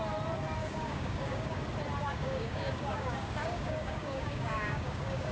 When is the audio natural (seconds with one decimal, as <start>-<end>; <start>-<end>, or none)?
0.0-0.6; 1.6-2.0

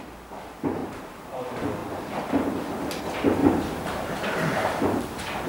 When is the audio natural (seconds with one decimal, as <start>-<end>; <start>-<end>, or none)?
0.0-0.8; 1.4-3.4; 5.0-5.5

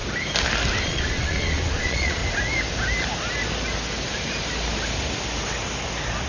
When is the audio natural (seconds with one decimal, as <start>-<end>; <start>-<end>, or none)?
0.0-0.8; 2.2-6.3

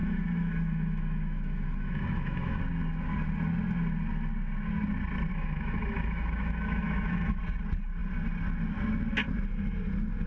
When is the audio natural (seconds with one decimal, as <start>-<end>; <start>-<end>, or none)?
2.6-5.3; 7.4-10.3

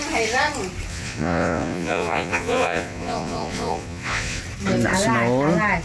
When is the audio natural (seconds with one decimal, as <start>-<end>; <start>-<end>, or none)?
0.0-0.9; 4.4-5.8

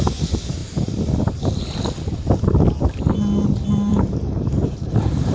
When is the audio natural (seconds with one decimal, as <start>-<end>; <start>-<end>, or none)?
0.0-3.9

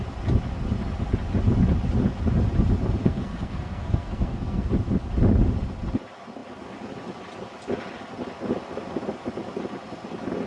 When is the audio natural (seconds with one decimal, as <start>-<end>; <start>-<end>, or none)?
0.0-3.0; 4.7-10.5

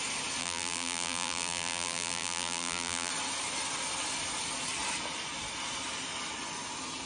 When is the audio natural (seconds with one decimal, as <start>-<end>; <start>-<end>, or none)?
0.0-0.4; 3.1-7.1